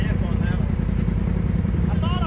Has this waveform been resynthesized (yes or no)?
yes